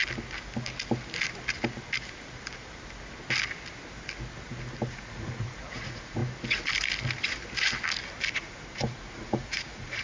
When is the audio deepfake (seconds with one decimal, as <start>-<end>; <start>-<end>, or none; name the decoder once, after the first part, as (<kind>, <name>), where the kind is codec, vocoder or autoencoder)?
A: 4.9-6.2 (vocoder, Vocos); 8.3-10.0